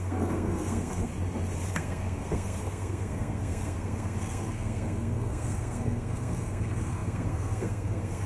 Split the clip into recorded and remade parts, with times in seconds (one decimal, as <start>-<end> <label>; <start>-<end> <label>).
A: 0.0-1.1 remade; 1.1-1.7 recorded; 1.7-8.3 remade